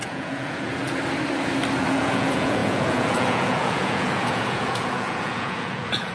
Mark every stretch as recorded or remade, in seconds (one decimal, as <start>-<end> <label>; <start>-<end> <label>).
0.0-0.8 remade; 0.8-1.8 recorded; 1.8-6.1 remade